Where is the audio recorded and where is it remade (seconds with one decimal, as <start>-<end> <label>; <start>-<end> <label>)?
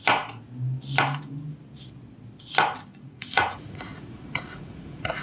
0.0-2.9 recorded; 2.9-5.2 remade